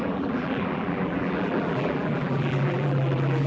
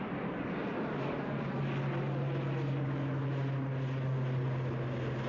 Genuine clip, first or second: second